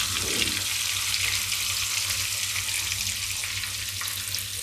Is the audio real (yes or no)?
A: yes